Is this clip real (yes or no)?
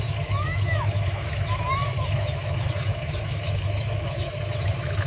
no